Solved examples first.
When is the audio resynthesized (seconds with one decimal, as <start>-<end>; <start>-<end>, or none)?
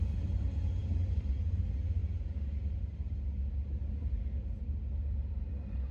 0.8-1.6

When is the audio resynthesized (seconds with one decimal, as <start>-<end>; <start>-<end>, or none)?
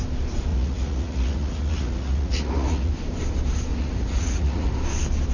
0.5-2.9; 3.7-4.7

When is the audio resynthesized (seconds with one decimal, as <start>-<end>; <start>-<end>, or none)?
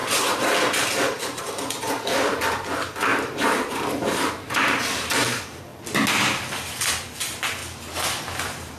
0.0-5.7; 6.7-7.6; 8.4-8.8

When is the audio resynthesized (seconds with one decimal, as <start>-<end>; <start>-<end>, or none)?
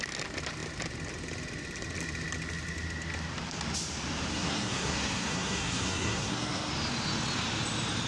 4.3-6.7